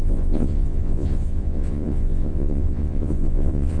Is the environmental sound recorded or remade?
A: remade